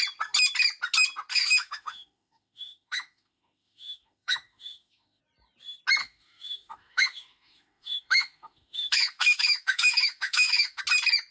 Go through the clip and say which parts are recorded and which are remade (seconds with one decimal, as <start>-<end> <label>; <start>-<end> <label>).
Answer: 0.0-1.3 recorded; 1.3-5.2 remade; 5.2-6.0 recorded; 6.0-10.8 remade; 10.8-11.3 recorded